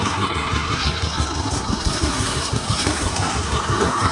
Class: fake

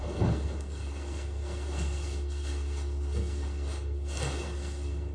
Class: fake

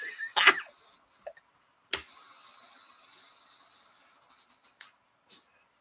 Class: real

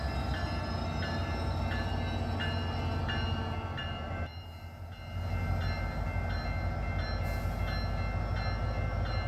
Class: real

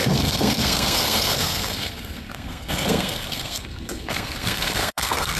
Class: fake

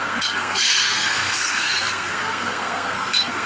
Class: fake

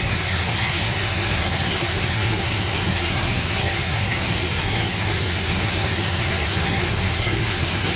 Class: fake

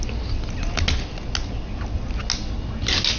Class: real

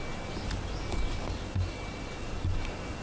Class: real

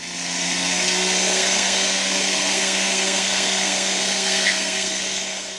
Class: fake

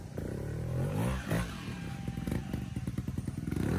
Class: real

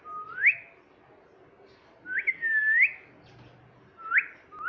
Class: real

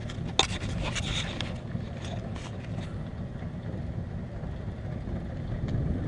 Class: real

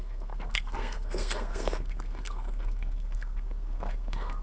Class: fake